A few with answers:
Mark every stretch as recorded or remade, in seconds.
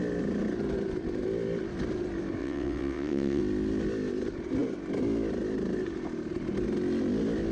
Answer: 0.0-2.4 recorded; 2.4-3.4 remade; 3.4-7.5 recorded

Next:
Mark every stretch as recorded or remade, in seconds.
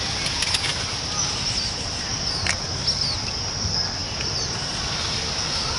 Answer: 0.0-5.8 recorded